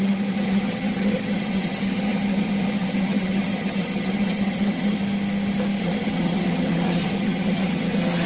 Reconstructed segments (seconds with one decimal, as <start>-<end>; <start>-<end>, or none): 0.0-5.0; 5.8-8.3